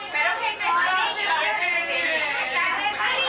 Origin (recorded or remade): recorded